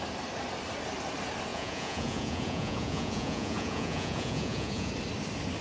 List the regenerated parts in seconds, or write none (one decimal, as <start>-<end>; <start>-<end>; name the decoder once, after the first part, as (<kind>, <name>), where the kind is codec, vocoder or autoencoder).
1.5-4.9 (vocoder, Vocos)